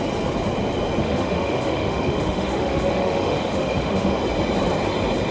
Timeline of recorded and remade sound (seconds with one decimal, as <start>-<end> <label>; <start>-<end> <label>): 0.0-1.0 recorded; 1.0-4.2 remade; 4.2-5.3 recorded